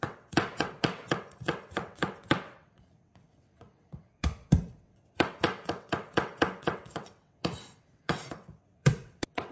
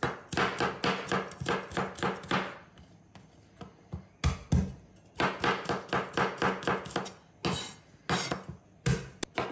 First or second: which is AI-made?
first